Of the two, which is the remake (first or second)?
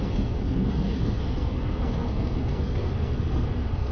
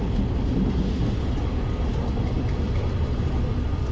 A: first